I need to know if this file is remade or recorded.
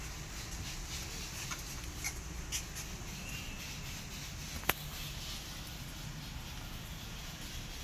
recorded